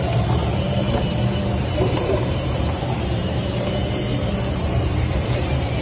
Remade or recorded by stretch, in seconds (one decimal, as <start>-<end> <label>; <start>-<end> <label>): 0.0-5.8 remade